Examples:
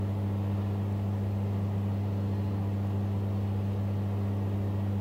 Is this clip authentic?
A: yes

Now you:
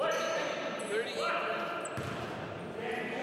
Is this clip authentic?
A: yes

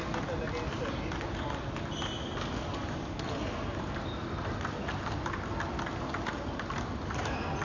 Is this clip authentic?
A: yes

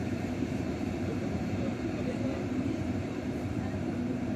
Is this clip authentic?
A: no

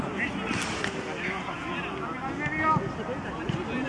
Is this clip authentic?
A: yes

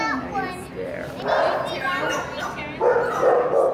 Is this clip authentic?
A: yes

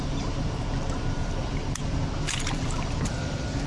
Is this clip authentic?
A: no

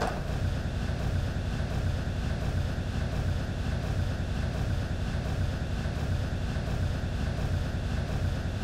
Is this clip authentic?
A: no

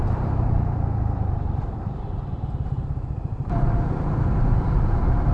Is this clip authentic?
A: no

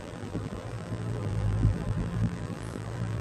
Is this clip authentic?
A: no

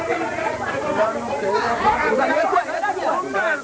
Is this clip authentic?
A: no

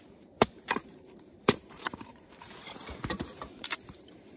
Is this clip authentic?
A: no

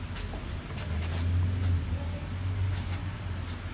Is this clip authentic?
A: yes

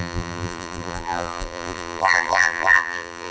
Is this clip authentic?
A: no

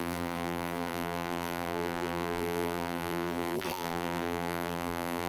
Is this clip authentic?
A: no